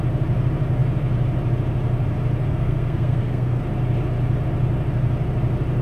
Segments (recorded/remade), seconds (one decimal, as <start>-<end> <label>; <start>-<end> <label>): 0.0-2.5 recorded; 2.5-3.6 remade; 3.6-5.8 recorded